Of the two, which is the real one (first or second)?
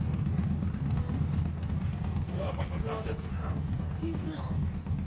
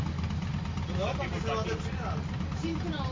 second